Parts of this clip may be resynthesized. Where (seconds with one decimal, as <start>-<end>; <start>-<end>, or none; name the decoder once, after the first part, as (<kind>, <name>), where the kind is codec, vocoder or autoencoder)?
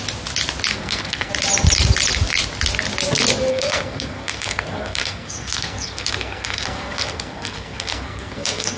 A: 0.7-1.3 (codec, SNAC); 3.5-8.8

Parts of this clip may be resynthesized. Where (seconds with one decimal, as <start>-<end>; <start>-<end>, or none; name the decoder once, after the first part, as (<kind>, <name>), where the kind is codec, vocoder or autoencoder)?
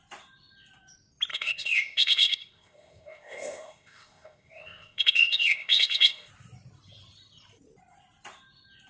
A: 1.3-6.3 (codec, ZipCodec)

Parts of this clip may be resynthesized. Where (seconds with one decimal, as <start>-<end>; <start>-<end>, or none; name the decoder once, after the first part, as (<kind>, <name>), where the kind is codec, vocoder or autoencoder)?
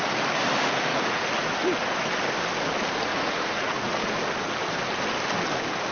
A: 0.9-1.5 (vocoder, Vocos); 3.1-4.2